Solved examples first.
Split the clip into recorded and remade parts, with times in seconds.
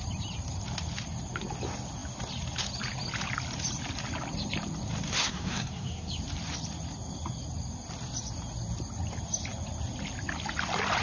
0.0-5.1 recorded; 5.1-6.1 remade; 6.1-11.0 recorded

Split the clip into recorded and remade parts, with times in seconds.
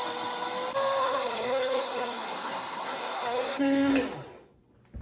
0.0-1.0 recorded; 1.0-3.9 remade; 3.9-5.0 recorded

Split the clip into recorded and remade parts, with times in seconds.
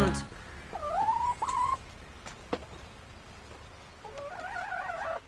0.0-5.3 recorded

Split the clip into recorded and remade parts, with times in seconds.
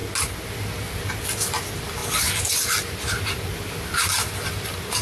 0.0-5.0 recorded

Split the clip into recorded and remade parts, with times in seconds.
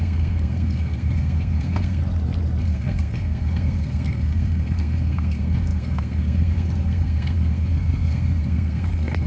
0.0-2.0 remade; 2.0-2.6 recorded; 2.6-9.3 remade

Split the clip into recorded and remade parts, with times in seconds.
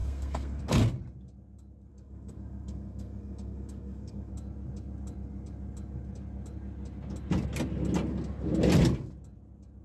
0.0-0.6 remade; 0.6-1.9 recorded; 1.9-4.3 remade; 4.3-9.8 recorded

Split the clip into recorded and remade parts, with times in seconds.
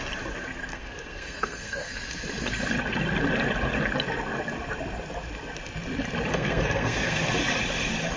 0.0-0.7 recorded; 0.7-2.0 remade; 2.0-6.3 recorded; 6.3-7.3 remade; 7.3-8.2 recorded